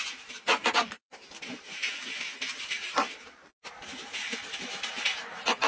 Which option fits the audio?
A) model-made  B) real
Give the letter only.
A